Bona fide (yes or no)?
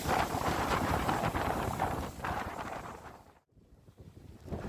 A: no